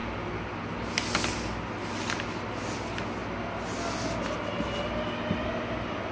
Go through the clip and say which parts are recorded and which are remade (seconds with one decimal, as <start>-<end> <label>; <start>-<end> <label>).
0.0-6.1 recorded

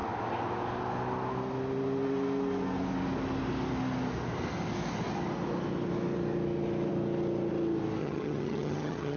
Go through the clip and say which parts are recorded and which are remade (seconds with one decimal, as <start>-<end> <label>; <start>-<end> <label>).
0.0-8.0 recorded; 8.0-9.2 remade

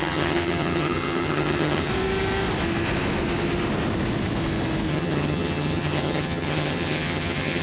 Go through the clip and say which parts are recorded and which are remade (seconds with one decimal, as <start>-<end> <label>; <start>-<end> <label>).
0.0-1.9 remade; 1.9-4.9 recorded; 4.9-7.6 remade

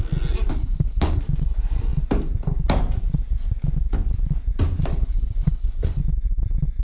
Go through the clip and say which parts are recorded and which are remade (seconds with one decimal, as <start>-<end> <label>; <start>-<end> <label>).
0.0-0.5 recorded; 0.5-1.2 remade; 1.2-4.9 recorded; 4.9-6.0 remade; 6.0-6.8 recorded